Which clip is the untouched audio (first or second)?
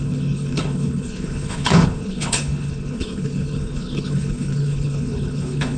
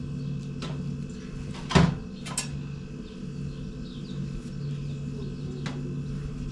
second